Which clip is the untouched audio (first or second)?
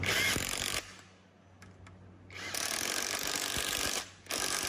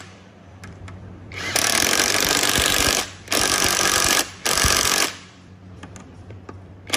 first